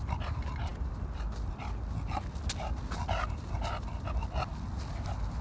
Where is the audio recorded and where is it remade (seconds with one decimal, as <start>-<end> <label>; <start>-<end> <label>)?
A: 0.0-5.4 recorded